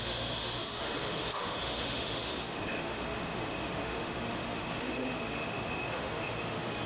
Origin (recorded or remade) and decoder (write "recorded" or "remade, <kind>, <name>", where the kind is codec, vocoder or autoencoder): remade, autoencoder, DAC-VAE